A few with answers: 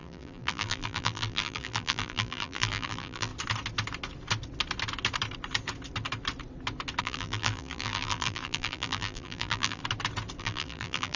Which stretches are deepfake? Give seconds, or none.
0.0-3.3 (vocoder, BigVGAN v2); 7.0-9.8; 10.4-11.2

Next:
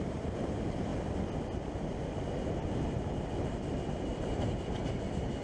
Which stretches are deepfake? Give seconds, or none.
4.1-4.8 (vocoder, BigVGAN v2)

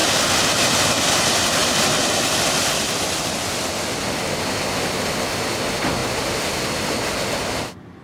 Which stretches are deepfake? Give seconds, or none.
none

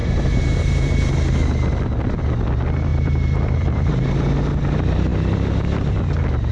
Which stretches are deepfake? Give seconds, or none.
0.0-1.1 (vocoder, BigVGAN v2); 2.9-3.9

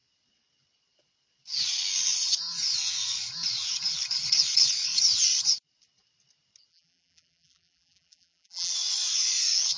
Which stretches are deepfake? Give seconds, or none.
6.7-8.7 (vocoder, BigVGAN v2)

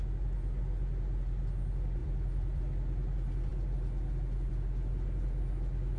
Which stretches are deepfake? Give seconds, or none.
2.0-2.7 (vocoder, BigVGAN v2)